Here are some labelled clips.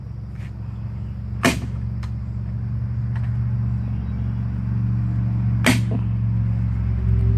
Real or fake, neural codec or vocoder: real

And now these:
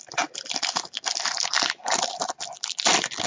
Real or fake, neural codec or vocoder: real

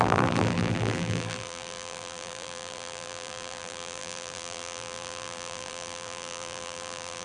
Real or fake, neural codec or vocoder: fake, vocoder, BigVGAN v2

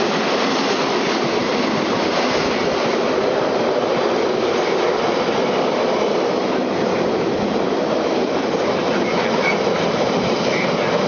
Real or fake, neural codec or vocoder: fake, vocoder, BigVGAN v2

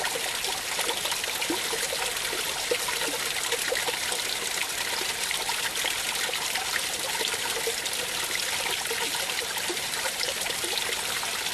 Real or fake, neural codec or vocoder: real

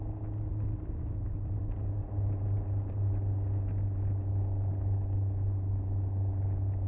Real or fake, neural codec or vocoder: real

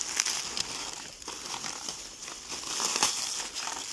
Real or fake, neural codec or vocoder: real